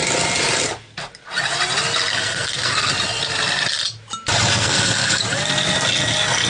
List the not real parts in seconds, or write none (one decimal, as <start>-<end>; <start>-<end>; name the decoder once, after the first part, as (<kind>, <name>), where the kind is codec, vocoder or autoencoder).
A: 2.1-2.9 (codec, SNAC); 4.5-5.2